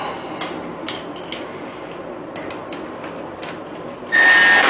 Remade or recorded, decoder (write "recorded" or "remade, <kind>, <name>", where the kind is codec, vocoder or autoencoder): recorded